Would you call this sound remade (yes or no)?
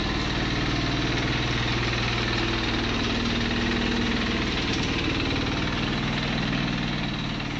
no